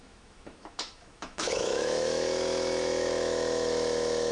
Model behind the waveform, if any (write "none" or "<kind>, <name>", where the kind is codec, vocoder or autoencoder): autoencoder, DAC-VAE